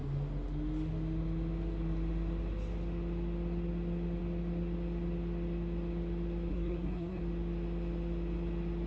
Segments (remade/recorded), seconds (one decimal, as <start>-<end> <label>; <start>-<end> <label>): 0.0-6.5 recorded; 6.5-7.2 remade; 7.2-8.9 recorded